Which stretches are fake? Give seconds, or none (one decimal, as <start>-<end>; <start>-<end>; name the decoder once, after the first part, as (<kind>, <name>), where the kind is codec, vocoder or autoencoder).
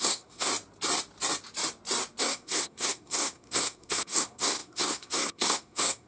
0.0-0.5 (codec, SNAC); 2.2-6.1